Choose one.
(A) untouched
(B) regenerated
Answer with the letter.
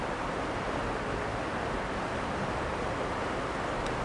A